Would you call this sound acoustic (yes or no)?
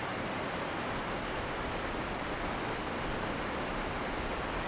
yes